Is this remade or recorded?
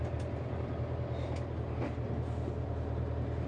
recorded